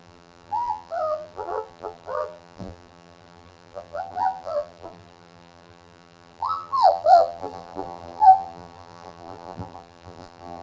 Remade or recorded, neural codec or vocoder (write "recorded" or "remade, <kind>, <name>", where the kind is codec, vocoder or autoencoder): remade, vocoder, BigVGAN v2